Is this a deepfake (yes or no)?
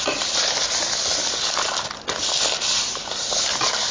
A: no